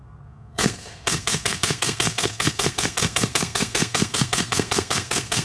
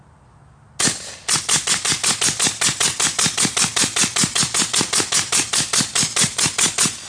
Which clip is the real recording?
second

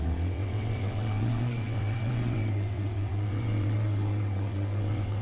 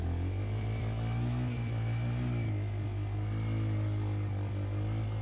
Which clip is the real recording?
second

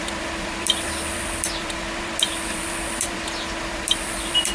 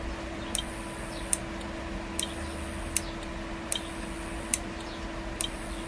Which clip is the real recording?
second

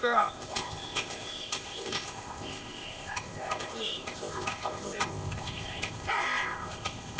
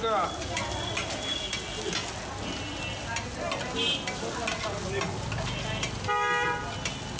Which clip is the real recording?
second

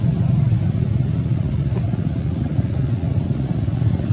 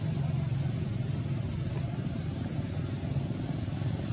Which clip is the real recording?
second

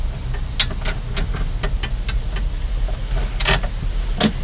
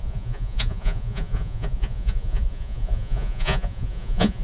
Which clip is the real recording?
first